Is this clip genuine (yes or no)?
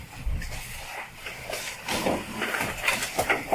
no